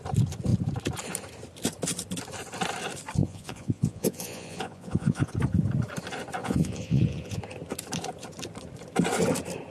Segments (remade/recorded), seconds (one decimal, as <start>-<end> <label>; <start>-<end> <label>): 0.0-3.2 recorded; 3.2-5.3 remade; 5.3-6.4 recorded; 6.4-7.4 remade; 7.4-9.7 recorded